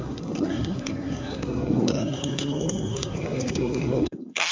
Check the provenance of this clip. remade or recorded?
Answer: remade